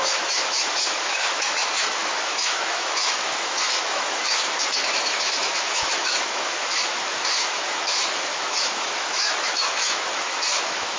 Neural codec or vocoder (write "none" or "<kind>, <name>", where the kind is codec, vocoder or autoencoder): autoencoder, DAC-VAE